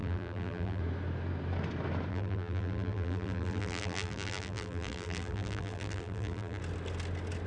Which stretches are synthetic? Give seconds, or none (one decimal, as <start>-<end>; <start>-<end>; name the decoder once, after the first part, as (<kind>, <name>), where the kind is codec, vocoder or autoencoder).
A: 0.0-0.8 (vocoder, BigVGAN v2); 2.1-6.6